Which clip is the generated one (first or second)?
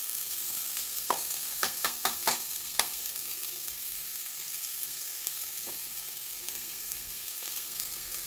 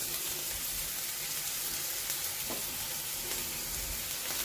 first